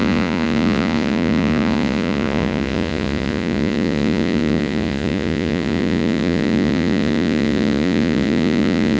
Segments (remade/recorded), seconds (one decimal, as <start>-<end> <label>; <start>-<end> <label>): 0.0-9.0 remade